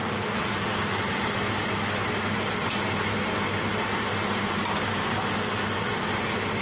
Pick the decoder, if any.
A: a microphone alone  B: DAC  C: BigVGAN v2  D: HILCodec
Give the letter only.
A